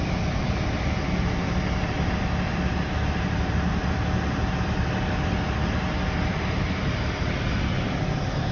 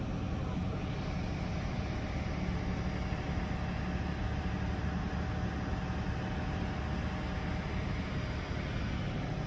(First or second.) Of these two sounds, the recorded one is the second